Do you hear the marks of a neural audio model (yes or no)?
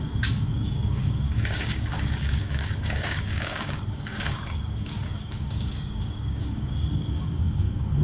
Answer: yes